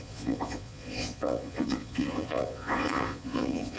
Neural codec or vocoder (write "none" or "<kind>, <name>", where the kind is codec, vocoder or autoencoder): vocoder, Vocos